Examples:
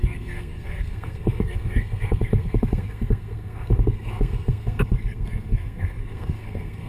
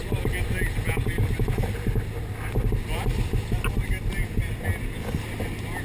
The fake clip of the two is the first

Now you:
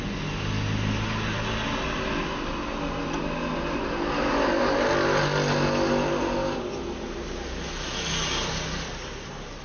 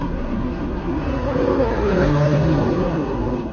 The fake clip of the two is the second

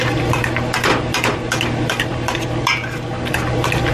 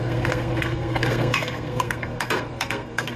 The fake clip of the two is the second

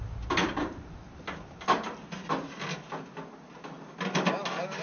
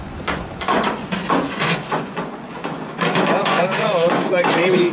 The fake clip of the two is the second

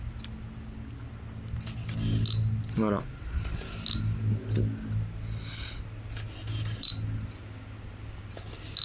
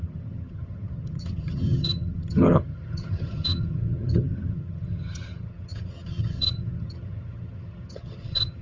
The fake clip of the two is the second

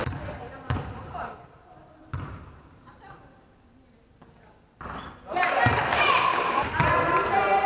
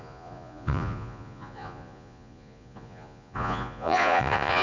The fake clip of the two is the second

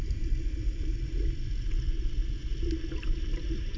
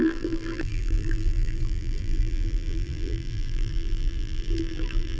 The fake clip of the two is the second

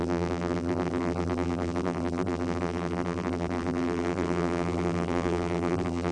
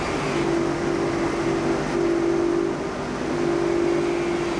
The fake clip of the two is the first